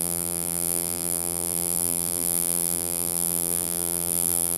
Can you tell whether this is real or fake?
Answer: fake